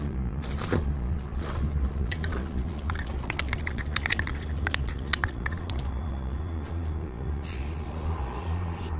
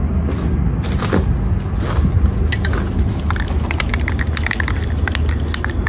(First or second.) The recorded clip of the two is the second